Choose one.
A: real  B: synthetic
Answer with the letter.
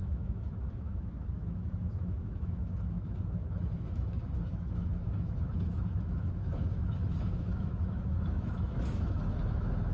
B